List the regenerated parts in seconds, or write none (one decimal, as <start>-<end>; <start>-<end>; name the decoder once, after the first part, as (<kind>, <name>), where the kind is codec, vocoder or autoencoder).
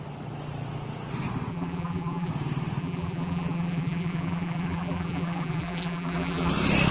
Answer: 1.5-2.3 (vocoder, BigVGAN v2); 2.8-6.5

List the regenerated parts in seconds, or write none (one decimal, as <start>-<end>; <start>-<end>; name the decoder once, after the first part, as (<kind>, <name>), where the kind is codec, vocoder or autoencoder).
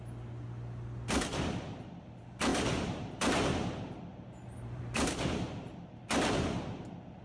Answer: 2.5-3.2 (vocoder, BigVGAN v2); 4.1-4.8